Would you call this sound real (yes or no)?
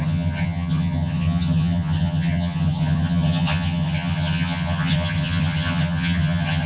no